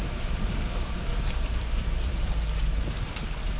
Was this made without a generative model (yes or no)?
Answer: no